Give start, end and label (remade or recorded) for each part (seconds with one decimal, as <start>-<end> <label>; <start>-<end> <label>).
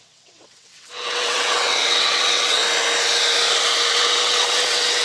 0.0-2.6 remade; 2.6-3.9 recorded; 3.9-5.0 remade